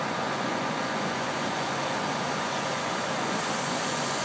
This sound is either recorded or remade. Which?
remade